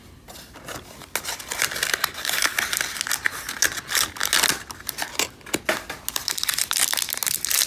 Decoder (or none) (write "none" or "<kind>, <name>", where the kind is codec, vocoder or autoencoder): none